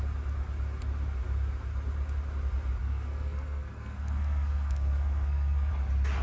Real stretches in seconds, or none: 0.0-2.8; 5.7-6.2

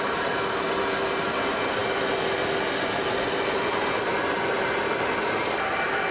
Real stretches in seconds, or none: 0.0-6.1

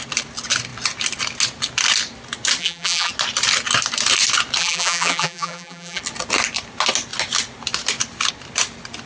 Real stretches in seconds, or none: 0.0-2.6; 3.1-4.6; 6.0-9.1

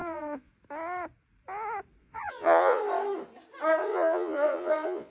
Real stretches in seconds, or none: 0.5-2.0; 2.8-3.8

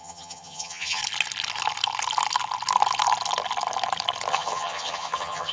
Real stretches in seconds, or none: 1.0-4.3

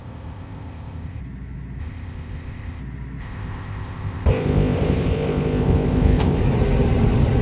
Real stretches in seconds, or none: 1.2-1.8; 2.8-3.2; 6.4-7.4

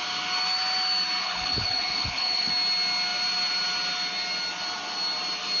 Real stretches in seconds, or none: 0.0-1.2; 2.5-5.6